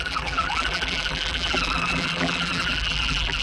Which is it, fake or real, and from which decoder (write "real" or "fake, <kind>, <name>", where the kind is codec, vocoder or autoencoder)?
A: fake, vocoder, BigVGAN v2